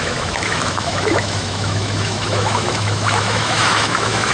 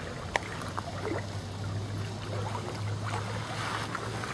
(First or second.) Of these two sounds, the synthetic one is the first